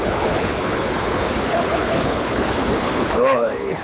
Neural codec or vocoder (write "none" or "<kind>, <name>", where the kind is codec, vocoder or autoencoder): codec, HILCodec